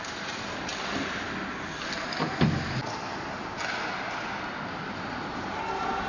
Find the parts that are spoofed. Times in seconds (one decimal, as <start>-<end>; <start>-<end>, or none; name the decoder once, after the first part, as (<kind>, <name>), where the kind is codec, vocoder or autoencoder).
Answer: none